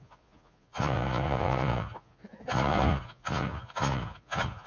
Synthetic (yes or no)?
yes